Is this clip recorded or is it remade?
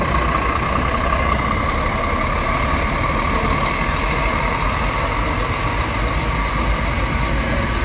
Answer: recorded